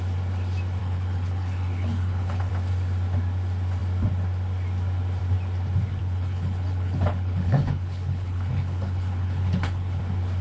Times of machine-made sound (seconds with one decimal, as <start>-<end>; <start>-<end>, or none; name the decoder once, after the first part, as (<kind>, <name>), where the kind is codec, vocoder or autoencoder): 0.8-2.5 (codec, HILCodec); 6.0-10.0